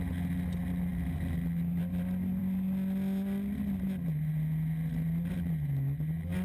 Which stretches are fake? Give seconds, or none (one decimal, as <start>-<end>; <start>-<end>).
none